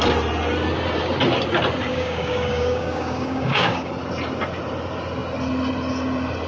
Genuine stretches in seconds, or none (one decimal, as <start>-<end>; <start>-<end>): 0.0-1.9; 3.9-6.5